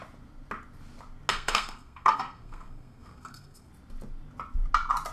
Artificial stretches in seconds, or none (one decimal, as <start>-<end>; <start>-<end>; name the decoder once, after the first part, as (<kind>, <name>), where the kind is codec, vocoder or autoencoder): 1.3-3.7 (codec, SNAC)